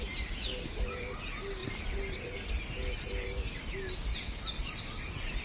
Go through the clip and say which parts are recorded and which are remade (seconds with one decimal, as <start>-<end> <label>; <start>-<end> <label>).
0.0-1.6 recorded; 1.6-2.5 remade; 2.5-5.4 recorded

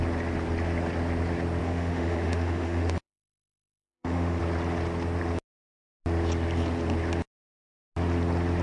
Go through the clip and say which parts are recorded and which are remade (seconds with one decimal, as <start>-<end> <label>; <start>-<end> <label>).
0.0-1.6 recorded; 1.6-4.4 remade; 4.4-8.6 recorded

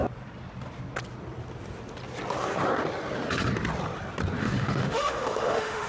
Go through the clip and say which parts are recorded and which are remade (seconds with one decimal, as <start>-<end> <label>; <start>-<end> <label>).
0.0-4.4 recorded; 4.4-5.9 remade

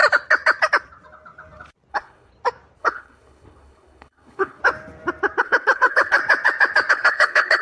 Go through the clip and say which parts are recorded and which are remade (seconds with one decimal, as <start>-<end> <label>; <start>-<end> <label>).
0.0-1.9 recorded; 1.9-2.3 remade; 2.3-2.8 recorded; 2.8-4.6 remade; 4.6-5.4 recorded; 5.4-6.2 remade; 6.2-6.9 recorded; 6.9-7.6 remade